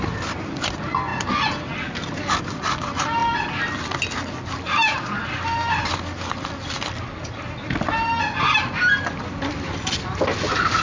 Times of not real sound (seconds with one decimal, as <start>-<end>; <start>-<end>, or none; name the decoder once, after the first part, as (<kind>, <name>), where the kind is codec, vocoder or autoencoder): none